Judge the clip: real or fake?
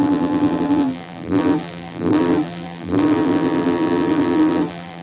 fake